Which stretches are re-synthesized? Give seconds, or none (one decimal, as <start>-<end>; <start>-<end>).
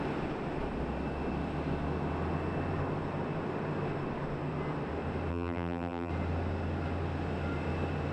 5.3-6.1